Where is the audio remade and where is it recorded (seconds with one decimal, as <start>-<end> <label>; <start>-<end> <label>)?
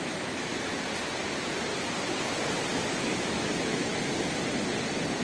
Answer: 0.0-0.5 remade; 0.5-3.0 recorded; 3.0-3.9 remade; 3.9-5.2 recorded